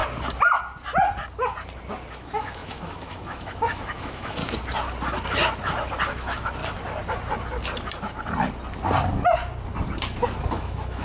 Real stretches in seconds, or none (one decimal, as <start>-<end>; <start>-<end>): 0.0-2.1; 4.4-6.1; 6.6-10.5